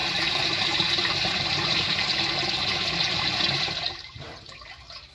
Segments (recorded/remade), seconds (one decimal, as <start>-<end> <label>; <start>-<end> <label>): 0.0-2.1 remade; 2.1-3.1 recorded; 3.1-4.6 remade; 4.6-5.1 recorded